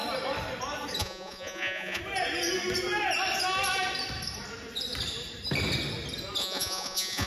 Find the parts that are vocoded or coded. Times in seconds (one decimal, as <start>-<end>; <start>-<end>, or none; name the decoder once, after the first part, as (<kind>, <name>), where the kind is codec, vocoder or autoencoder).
1.0-2.0 (vocoder, Vocos); 6.4-7.3